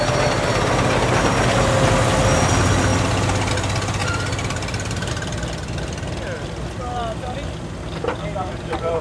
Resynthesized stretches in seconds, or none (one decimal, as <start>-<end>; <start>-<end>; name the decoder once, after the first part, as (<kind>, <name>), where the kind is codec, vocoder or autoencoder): 2.9-3.5 (vocoder, BigVGAN v2); 4.0-5.1